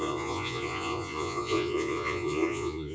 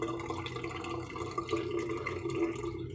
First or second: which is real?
second